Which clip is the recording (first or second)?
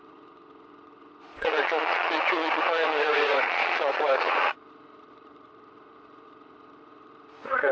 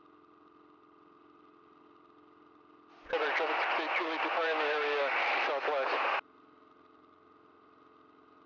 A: second